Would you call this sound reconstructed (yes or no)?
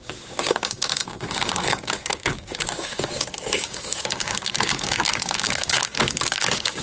yes